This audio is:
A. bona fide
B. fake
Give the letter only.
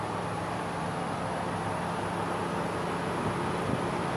A